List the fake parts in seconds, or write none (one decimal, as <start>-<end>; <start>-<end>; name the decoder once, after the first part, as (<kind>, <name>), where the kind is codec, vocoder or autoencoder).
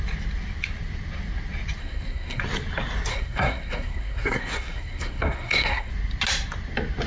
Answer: 1.8-2.4 (codec, SNAC); 3.1-5.9